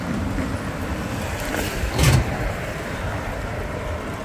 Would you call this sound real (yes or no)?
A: yes